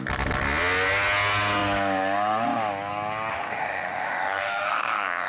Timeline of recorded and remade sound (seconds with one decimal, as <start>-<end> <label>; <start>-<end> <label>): 0.0-3.3 recorded; 3.3-5.3 remade